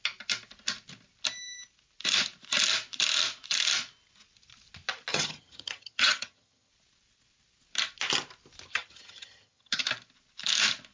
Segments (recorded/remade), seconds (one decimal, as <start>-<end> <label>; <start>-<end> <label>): 0.0-5.1 recorded; 5.1-6.7 remade; 6.7-8.7 recorded; 8.7-9.8 remade; 9.8-10.9 recorded